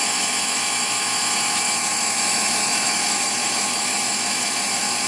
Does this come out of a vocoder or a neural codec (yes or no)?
yes